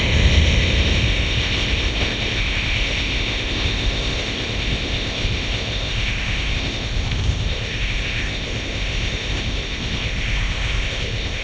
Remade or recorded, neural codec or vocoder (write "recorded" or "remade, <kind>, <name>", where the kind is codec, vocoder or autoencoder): remade, codec, ZipCodec